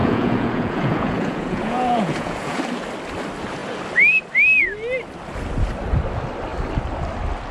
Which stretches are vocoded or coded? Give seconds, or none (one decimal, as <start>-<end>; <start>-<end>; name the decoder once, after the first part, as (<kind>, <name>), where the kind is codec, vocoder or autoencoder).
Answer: 0.0-2.6 (vocoder, Vocos)